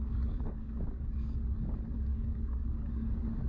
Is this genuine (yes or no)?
no